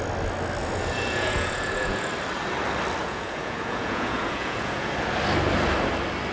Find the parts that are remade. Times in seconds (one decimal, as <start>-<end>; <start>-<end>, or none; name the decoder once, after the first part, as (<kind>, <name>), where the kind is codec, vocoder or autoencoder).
0.6-2.1 (vocoder, Vocos); 3.0-4.9

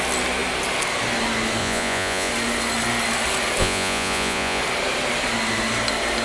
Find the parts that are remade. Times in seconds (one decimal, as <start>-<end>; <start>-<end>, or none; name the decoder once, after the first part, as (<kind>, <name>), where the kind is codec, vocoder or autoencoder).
1.6-2.3 (vocoder, Vocos); 3.6-4.6

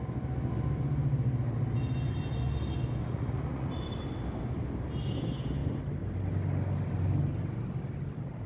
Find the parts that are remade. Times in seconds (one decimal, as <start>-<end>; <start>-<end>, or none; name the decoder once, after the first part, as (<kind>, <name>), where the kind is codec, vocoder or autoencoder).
3.0-3.7 (vocoder, Vocos)